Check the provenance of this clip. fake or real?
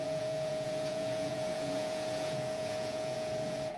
fake